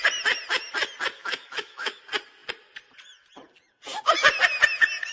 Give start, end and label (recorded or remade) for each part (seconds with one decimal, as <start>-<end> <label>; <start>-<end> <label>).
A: 0.0-1.2 recorded; 1.2-2.0 remade; 2.0-5.1 recorded